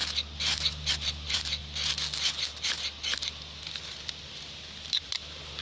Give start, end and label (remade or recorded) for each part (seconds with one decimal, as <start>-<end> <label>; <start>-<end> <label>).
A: 0.0-0.9 recorded; 0.9-1.6 remade; 1.6-5.0 recorded; 5.0-5.6 remade